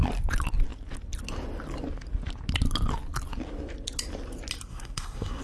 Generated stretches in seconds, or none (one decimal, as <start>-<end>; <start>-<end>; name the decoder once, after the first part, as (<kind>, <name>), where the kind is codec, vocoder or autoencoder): 4.7-5.4 (codec, SNAC)